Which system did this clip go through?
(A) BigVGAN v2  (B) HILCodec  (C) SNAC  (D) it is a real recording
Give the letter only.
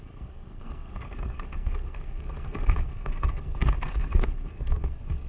C